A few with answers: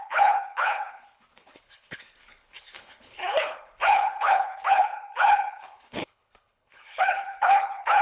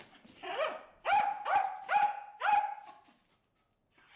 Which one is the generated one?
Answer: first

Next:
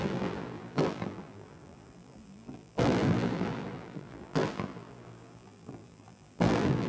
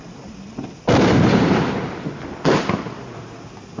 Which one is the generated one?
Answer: first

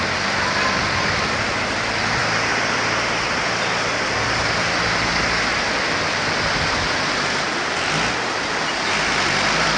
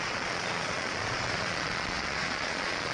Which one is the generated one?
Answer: second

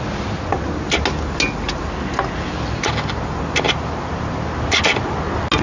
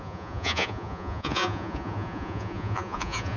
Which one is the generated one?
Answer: second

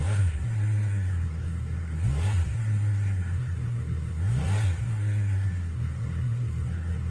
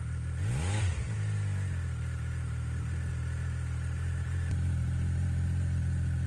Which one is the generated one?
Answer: first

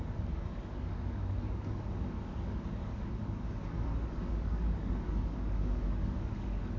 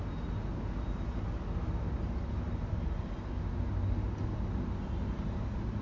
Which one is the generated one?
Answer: first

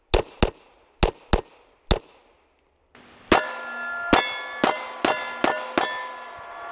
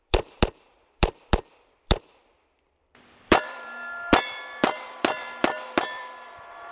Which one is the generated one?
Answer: second